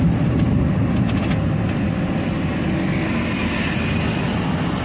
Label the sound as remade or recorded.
recorded